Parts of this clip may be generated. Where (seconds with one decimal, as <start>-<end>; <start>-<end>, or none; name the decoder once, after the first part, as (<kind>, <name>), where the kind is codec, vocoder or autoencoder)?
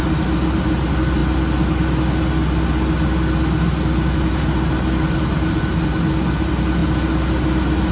none